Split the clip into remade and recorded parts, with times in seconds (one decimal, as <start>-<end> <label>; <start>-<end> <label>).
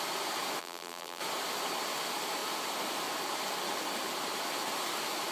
0.0-0.6 recorded; 0.6-1.2 remade; 1.2-5.3 recorded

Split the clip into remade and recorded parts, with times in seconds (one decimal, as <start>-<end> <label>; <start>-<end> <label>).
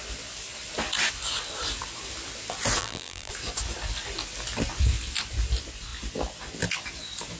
0.0-2.8 recorded; 2.8-3.3 remade; 3.3-7.4 recorded